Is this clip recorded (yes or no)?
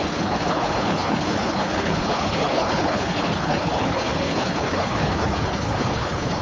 no